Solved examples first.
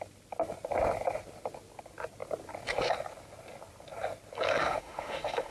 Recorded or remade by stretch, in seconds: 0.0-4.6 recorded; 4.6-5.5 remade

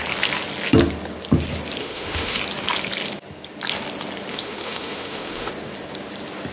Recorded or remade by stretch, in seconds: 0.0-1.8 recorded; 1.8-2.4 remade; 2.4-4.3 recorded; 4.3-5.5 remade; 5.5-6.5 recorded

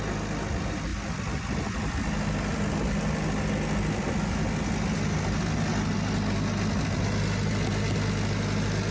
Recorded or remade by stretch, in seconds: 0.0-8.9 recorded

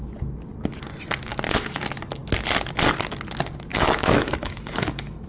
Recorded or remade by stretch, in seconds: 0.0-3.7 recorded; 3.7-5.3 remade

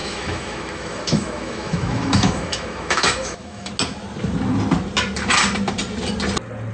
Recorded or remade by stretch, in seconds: 0.0-3.7 remade; 3.7-6.7 recorded